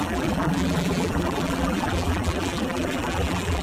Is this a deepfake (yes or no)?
yes